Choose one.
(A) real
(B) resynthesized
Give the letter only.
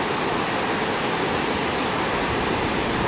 A